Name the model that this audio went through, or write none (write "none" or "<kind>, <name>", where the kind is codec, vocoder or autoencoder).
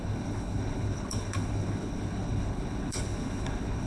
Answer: codec, HILCodec